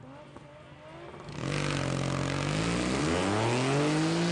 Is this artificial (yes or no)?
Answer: no